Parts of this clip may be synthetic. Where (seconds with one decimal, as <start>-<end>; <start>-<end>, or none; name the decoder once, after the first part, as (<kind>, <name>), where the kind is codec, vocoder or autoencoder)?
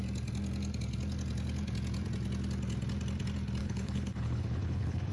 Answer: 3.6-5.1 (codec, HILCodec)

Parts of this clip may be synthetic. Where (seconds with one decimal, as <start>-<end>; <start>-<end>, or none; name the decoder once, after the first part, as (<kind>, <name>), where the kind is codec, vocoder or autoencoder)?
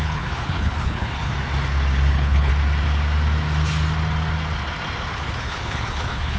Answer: 0.0-1.3 (codec, HILCodec); 2.1-2.5; 5.1-6.4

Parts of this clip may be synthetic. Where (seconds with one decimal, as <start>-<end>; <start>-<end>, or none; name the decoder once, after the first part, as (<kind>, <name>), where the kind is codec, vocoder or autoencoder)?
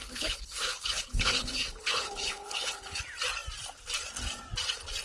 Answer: 0.0-3.0 (codec, HILCodec)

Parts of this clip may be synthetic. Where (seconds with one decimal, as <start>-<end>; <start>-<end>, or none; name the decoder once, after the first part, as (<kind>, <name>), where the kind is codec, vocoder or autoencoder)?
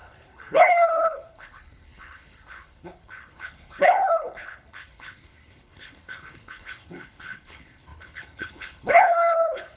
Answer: 0.0-9.8 (codec, HILCodec)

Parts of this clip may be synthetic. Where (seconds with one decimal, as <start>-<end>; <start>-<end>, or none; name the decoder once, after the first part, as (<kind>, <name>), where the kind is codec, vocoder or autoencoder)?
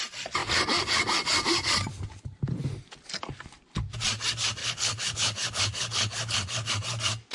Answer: 4.6-6.7 (codec, HILCodec)